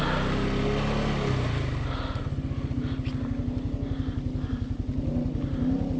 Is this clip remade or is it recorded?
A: recorded